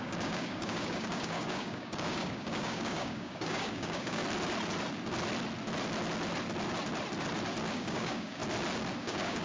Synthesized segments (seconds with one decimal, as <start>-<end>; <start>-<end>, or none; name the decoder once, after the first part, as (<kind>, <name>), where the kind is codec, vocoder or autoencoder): 0.0-4.2 (codec, DAC); 7.7-8.4; 9.0-9.4